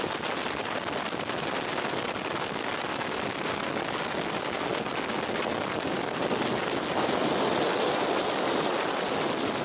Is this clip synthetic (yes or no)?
no